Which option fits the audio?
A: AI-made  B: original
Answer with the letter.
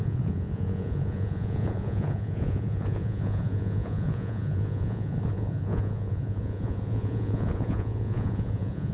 A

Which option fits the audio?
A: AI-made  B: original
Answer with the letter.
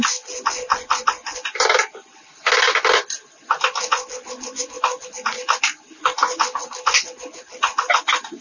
B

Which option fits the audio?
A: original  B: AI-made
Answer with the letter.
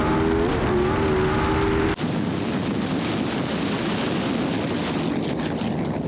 A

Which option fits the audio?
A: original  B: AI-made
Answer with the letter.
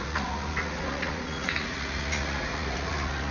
B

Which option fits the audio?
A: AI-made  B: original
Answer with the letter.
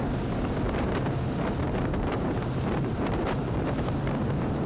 A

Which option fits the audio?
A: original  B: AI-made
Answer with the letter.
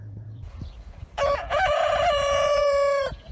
B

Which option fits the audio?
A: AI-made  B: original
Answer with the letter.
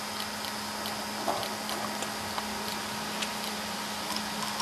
B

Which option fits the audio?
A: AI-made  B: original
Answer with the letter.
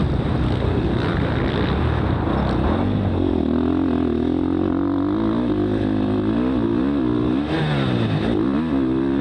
B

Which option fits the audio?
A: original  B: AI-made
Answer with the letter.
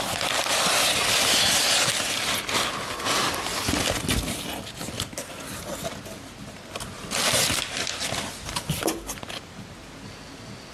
A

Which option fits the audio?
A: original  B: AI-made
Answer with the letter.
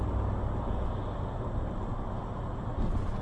A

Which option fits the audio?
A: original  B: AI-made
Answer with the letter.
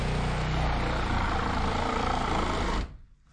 B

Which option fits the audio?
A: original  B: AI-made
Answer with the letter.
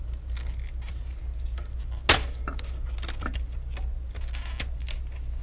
A